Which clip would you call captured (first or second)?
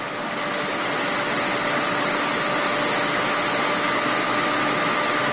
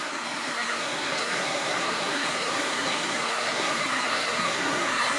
first